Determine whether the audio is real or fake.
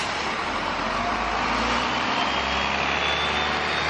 real